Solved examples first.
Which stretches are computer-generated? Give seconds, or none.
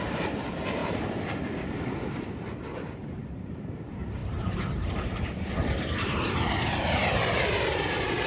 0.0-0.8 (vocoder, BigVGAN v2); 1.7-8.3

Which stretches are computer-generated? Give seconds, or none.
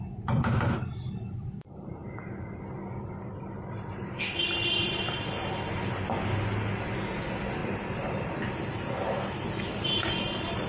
7.6-10.7 (vocoder, BigVGAN v2)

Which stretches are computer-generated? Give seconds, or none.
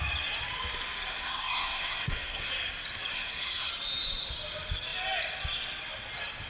1.1-2.5 (codec, SNAC); 3.1-3.7